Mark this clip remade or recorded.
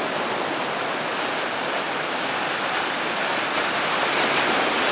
recorded